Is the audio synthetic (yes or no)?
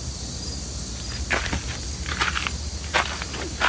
no